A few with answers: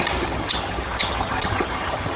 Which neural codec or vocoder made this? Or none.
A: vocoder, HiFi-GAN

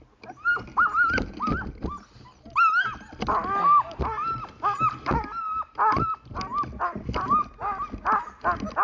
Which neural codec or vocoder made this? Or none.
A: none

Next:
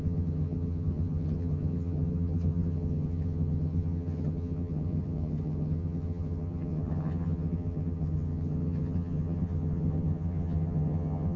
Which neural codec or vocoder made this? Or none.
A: vocoder, HiFi-GAN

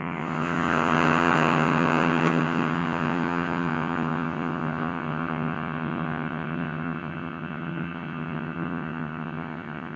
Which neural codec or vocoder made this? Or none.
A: vocoder, HiFi-GAN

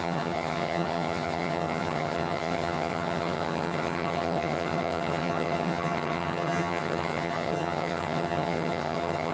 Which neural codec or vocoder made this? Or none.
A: vocoder, HiFi-GAN